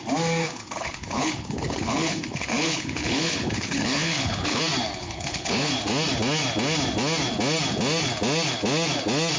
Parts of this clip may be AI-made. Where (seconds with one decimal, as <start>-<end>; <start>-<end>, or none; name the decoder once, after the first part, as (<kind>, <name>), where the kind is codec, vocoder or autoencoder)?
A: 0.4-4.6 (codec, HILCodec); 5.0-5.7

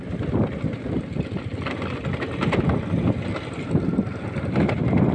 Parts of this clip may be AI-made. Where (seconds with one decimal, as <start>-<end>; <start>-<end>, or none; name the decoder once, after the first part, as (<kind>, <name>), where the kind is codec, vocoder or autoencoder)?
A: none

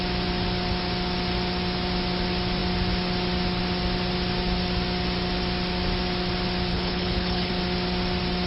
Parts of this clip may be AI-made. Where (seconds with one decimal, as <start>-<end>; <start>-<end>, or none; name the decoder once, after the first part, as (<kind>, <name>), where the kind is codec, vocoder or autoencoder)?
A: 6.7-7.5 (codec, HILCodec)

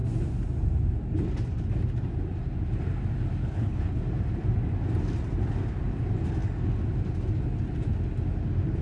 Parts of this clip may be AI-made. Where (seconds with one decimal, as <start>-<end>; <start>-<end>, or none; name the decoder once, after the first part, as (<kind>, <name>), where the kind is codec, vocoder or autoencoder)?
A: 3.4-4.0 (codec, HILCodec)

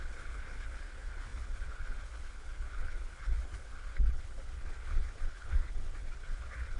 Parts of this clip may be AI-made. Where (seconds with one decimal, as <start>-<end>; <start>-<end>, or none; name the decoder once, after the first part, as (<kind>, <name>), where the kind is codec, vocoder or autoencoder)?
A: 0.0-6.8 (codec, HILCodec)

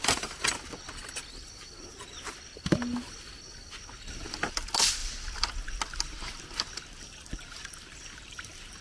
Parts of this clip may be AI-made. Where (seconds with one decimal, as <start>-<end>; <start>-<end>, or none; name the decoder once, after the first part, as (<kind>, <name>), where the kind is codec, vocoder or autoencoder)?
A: none

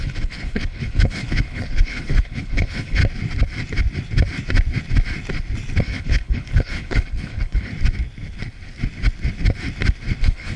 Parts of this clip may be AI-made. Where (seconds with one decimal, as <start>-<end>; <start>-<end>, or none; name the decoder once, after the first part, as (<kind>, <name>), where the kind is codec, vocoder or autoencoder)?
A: 0.0-3.0 (codec, HILCodec); 5.8-7.7; 10.2-10.6

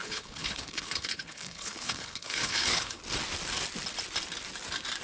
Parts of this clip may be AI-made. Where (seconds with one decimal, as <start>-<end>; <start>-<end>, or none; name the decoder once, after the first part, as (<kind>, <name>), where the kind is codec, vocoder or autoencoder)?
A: 0.0-3.0 (codec, HILCodec)